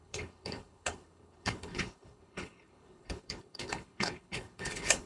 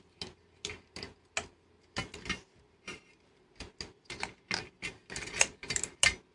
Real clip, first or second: second